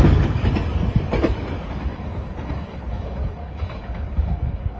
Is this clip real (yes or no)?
no